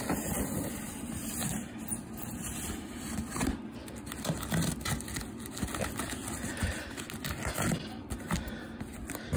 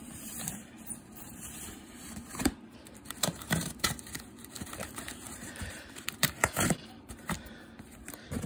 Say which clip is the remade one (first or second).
second